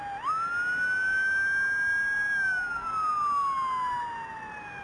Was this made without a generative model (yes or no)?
yes